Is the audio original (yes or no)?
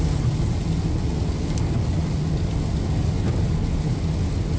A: yes